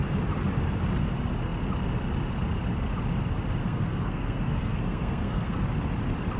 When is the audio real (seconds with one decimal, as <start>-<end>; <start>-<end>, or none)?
0.0-3.6; 5.6-6.4